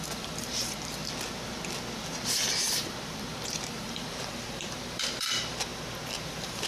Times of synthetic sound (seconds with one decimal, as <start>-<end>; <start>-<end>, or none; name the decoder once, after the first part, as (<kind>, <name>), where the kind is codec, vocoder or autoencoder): 0.0-1.0 (vocoder, BigVGAN v2); 2.5-5.7; 6.3-6.7